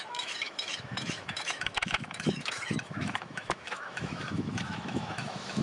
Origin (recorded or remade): remade